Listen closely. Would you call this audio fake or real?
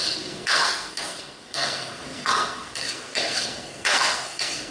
fake